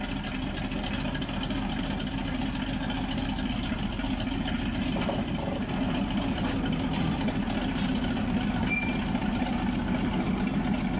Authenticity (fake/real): real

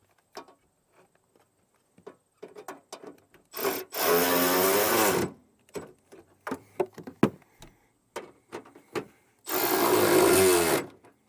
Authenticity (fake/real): real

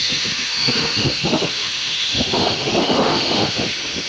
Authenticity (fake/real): fake